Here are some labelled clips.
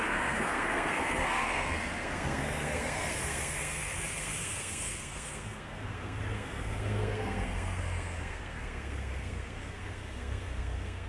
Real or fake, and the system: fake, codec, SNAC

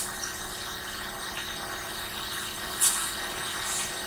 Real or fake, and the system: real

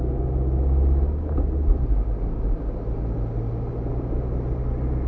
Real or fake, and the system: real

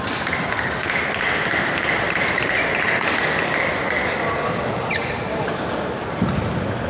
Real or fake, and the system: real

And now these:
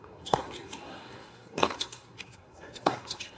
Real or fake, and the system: fake, codec, SNAC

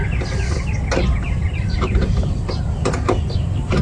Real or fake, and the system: real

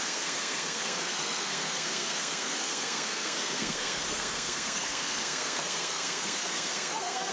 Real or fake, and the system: fake, codec, SNAC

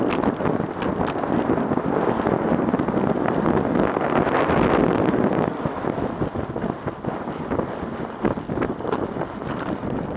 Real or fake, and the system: real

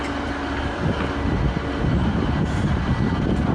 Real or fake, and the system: real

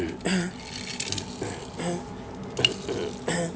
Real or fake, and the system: real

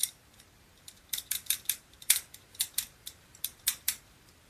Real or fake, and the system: fake, vocoder, BigVGAN v2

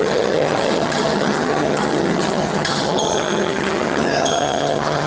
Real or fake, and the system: fake, vocoder, HiFi-GAN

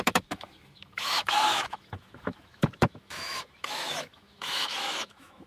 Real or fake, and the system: fake, autoencoder, DAC-VAE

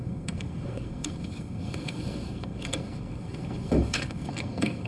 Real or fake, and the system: fake, codec, SNAC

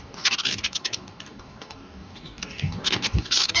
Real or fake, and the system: fake, codec, DAC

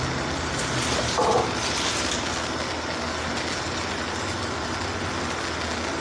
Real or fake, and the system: real